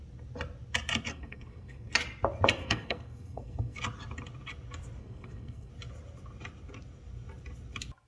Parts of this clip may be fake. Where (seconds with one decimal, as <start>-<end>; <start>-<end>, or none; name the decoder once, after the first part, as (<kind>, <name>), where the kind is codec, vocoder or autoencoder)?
1.1-1.9 (codec, SNAC); 2.6-3.8; 5.0-5.7